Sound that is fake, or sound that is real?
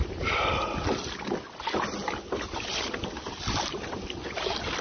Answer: real